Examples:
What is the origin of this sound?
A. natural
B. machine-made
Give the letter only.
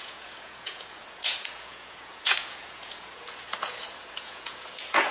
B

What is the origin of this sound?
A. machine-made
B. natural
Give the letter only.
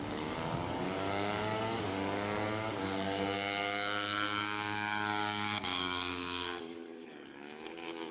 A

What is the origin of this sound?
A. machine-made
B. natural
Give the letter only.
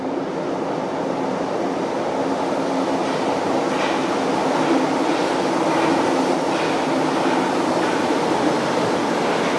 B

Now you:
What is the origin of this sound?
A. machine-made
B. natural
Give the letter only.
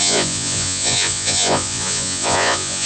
A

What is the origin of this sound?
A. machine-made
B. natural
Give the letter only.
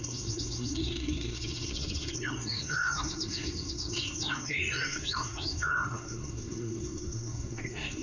A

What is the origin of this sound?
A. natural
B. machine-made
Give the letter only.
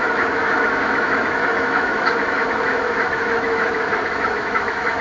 B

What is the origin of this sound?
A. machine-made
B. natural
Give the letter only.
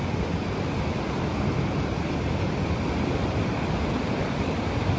B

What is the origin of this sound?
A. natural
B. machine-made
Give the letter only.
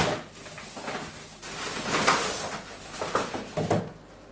A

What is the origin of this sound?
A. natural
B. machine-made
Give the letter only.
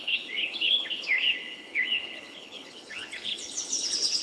B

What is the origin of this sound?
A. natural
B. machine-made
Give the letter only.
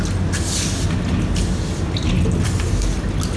A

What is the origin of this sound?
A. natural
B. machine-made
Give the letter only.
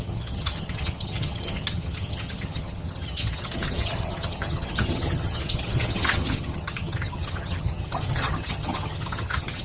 B